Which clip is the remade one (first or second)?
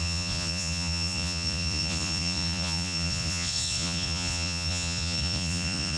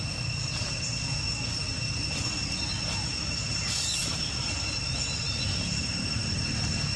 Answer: first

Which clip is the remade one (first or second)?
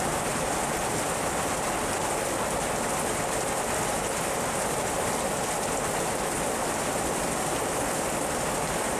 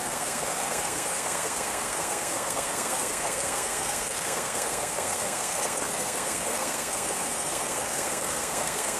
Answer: second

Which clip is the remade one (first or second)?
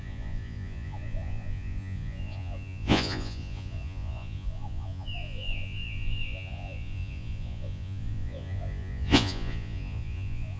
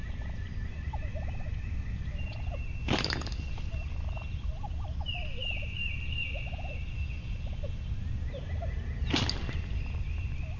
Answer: first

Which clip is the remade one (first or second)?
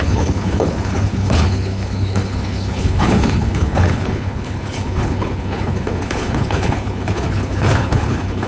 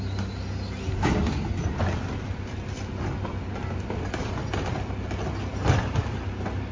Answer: first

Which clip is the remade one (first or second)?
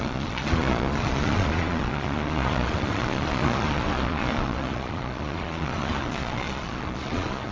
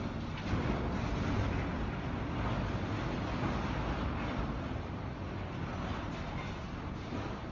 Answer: first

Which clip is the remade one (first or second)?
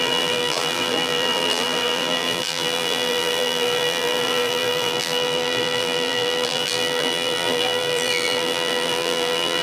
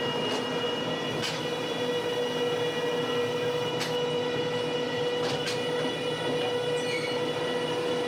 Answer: first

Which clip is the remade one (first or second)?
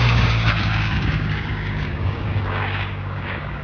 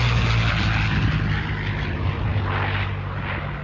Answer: first